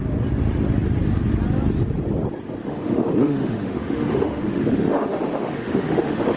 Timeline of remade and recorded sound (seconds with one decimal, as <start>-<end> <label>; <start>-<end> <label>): 0.0-2.6 recorded; 2.6-6.4 remade